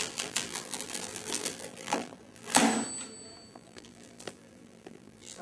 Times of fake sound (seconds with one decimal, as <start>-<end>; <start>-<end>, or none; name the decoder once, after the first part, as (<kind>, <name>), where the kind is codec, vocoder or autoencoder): 0.0-2.6 (vocoder, BigVGAN v2); 3.5-5.4